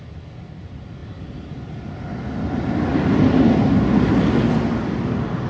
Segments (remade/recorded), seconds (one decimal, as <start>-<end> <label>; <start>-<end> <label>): 0.0-5.5 recorded